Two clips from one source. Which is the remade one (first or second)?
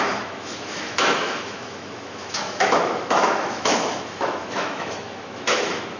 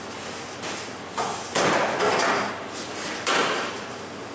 first